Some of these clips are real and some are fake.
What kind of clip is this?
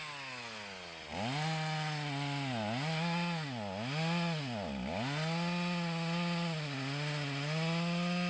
real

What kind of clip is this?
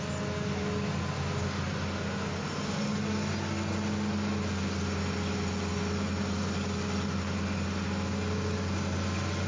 real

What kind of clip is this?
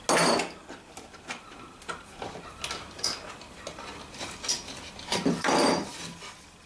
real